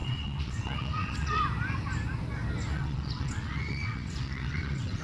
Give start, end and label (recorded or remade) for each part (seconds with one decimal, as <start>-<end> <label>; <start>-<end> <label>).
0.0-1.4 remade; 1.4-2.7 recorded; 2.7-5.0 remade

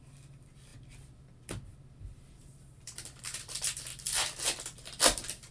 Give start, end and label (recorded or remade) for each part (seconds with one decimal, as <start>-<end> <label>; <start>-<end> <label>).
0.0-3.9 remade; 3.9-4.6 recorded; 4.6-5.5 remade

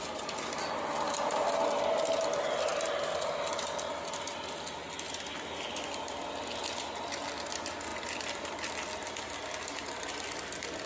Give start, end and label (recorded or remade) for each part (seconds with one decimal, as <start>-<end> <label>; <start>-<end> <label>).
0.0-10.9 recorded